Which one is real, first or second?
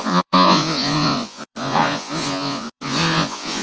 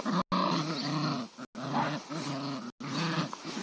second